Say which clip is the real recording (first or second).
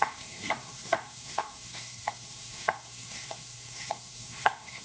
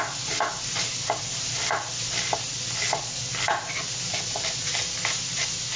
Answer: second